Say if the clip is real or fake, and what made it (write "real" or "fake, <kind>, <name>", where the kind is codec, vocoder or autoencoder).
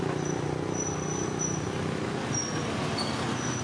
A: real